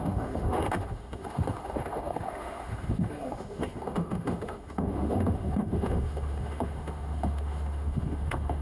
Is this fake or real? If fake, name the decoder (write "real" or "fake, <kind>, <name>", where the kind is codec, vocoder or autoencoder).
fake, autoencoder, DAC-VAE